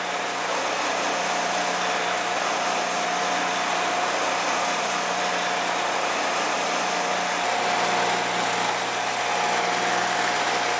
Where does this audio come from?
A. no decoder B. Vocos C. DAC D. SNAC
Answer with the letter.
A